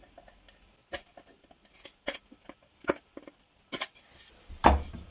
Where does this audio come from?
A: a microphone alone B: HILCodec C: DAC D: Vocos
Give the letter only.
A